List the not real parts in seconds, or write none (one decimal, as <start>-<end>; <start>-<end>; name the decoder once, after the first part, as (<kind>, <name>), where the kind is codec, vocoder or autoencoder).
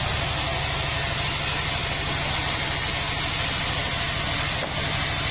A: none